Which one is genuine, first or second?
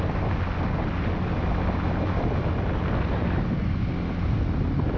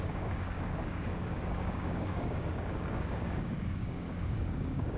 first